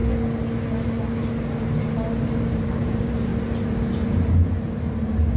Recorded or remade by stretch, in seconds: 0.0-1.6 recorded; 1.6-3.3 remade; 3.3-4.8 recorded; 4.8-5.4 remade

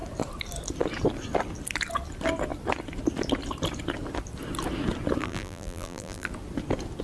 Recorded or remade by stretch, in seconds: 0.0-5.2 recorded; 5.2-6.3 remade; 6.3-7.0 recorded

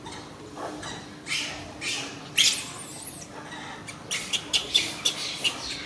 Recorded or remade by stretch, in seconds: 0.0-5.9 recorded

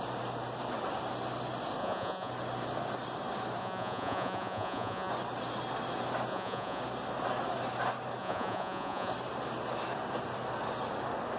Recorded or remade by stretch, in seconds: 0.0-1.8 recorded; 1.8-2.3 remade; 2.3-3.6 recorded; 3.6-5.1 remade; 5.1-6.3 recorded; 6.3-6.8 remade; 6.8-8.2 recorded; 8.2-9.1 remade; 9.1-11.4 recorded

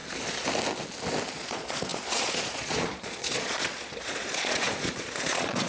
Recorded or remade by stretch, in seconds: 0.0-1.3 recorded; 1.3-5.7 remade